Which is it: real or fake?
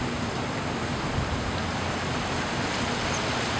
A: real